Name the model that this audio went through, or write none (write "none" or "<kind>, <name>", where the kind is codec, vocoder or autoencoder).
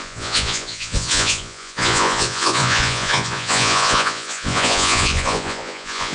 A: vocoder, Vocos